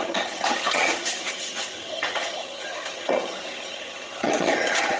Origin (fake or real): fake